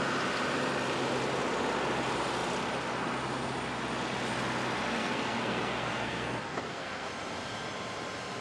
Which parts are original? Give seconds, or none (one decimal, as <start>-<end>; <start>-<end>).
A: 0.0-5.0; 7.1-8.4